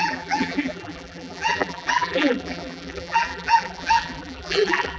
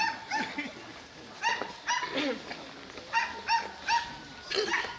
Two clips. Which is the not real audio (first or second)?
first